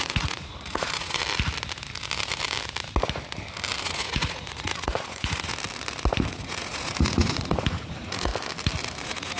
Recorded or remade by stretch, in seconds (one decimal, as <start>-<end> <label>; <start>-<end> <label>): 0.0-1.2 remade; 1.2-3.8 recorded; 3.8-5.5 remade; 5.5-6.3 recorded; 6.3-8.3 remade; 8.3-9.0 recorded; 9.0-9.4 remade